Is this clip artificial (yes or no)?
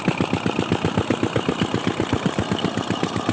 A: no